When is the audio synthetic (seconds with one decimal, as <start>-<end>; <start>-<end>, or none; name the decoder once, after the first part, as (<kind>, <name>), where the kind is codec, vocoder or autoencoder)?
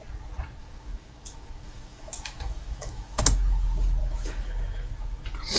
0.6-3.2 (autoencoder, DAC-VAE); 4.0-4.9